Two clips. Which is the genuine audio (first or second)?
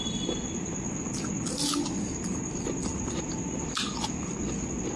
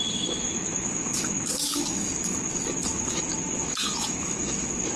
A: first